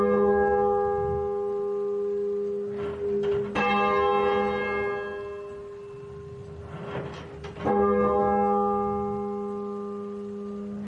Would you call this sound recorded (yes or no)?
yes